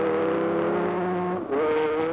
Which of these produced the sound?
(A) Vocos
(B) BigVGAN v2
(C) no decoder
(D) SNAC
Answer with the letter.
C